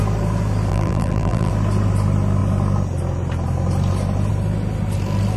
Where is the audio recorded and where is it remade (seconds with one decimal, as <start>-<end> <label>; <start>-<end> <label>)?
0.0-0.7 recorded; 0.7-1.5 remade; 1.5-5.4 recorded